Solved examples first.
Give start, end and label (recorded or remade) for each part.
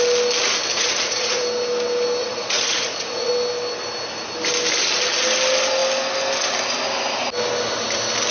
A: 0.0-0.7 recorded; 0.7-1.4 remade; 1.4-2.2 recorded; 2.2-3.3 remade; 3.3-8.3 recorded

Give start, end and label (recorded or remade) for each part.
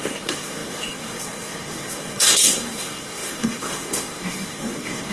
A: 0.0-5.1 remade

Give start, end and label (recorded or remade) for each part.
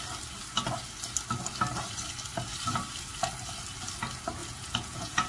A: 0.0-4.4 recorded; 4.4-5.3 remade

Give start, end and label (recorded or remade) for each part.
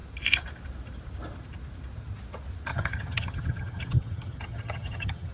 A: 0.0-2.7 recorded; 2.7-5.3 remade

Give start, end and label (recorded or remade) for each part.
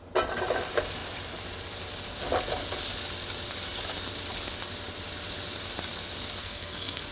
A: 0.0-6.4 recorded; 6.4-7.1 remade